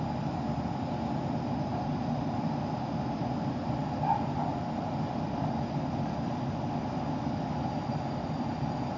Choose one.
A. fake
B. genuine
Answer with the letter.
B